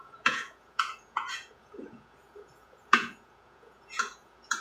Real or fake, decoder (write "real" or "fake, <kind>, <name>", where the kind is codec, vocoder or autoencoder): fake, vocoder, Vocos